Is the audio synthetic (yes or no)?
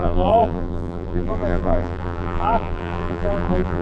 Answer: yes